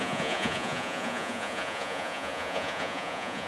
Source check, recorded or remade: remade